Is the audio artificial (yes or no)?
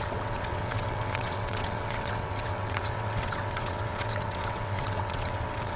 yes